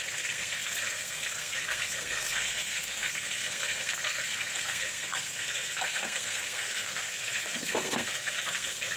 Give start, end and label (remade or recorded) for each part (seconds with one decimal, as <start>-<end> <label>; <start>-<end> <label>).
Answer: 0.0-9.0 remade